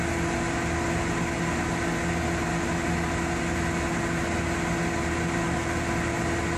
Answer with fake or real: real